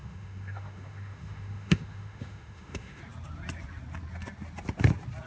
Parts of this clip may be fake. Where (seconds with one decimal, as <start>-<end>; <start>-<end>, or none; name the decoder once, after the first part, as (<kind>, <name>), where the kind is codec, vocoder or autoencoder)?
0.0-3.0 (autoencoder, DAC-VAE)